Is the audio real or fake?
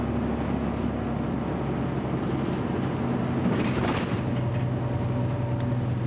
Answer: real